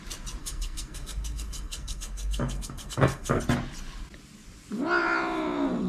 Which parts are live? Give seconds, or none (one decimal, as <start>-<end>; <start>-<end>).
0.0-0.4; 3.4-5.9